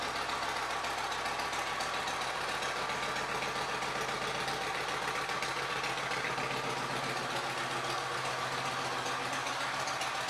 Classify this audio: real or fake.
real